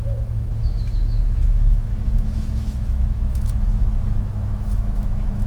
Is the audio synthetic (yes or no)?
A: yes